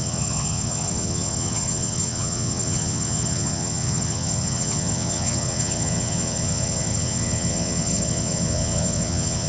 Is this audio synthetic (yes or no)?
yes